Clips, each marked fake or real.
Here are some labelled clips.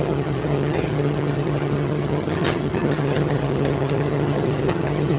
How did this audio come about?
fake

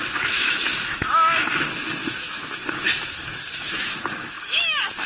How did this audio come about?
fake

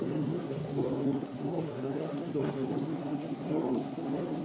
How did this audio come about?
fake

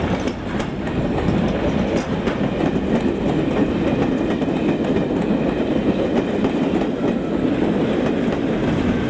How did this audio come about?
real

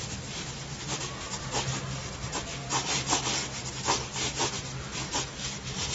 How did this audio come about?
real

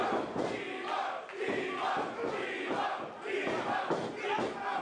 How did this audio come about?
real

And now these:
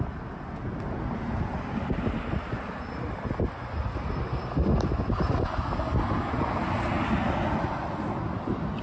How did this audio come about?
real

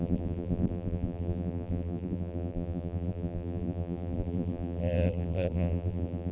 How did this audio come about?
fake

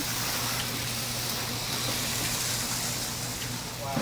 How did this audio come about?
real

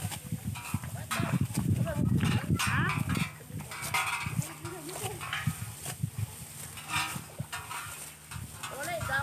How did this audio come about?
real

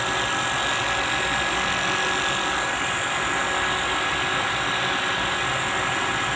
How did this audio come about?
real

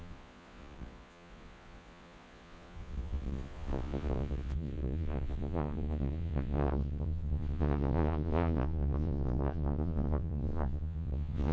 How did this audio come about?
fake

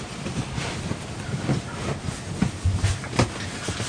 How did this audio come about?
real